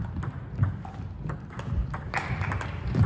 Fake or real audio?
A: real